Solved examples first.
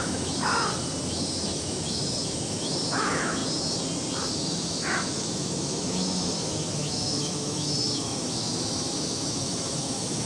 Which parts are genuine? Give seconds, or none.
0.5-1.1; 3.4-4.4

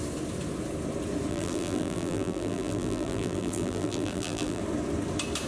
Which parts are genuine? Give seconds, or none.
0.0-1.3; 4.6-5.5